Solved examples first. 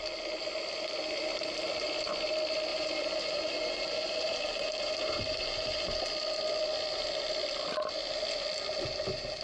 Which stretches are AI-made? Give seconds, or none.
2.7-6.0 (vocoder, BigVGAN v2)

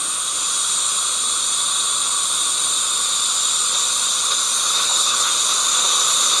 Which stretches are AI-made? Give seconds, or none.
4.7-5.3 (codec, HILCodec)

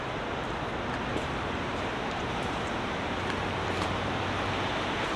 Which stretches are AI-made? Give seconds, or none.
1.1-4.2 (vocoder, BigVGAN v2)

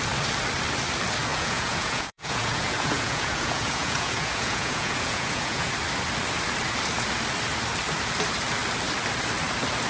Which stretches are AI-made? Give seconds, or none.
1.3-5.7 (vocoder, Vocos)

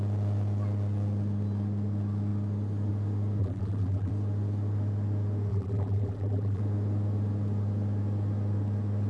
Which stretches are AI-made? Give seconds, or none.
3.4-4.1 (vocoder, BigVGAN v2); 5.5-6.6

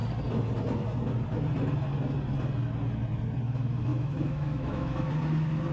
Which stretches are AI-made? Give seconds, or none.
3.9-5.1 (autoencoder, DAC-VAE)

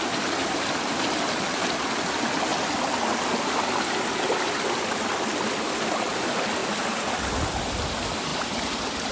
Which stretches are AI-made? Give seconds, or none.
2.5-3.1 (vocoder, BigVGAN v2); 8.3-9.1